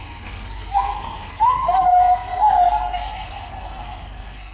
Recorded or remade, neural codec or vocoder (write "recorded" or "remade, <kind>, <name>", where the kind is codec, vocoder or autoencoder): remade, codec, SNAC